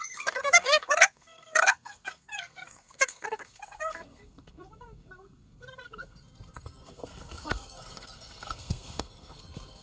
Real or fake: fake